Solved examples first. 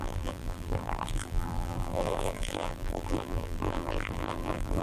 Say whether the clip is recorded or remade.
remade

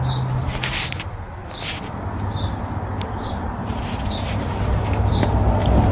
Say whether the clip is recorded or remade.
recorded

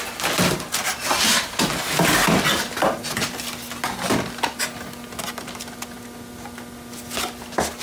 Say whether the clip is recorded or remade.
recorded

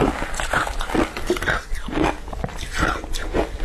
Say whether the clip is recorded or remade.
recorded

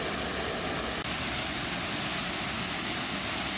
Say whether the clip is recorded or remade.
recorded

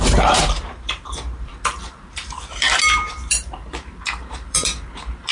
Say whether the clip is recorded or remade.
remade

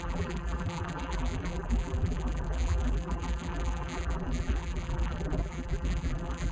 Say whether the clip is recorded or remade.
remade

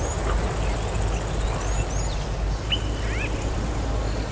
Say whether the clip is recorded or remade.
recorded